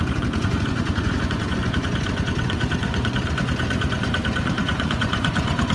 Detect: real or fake fake